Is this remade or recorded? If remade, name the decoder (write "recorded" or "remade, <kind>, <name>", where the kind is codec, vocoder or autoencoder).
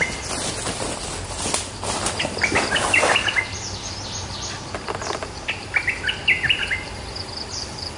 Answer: remade, vocoder, BigVGAN v2